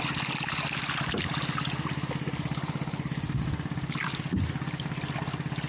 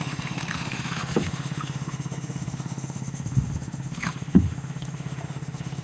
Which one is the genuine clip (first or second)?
first